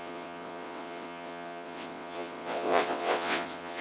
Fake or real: fake